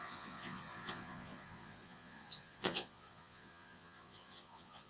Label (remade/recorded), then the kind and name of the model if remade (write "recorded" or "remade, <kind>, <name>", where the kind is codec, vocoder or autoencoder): remade, vocoder, Vocos